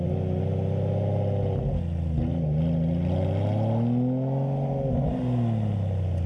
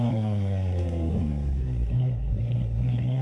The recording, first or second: first